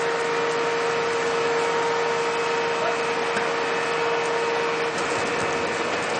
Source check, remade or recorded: recorded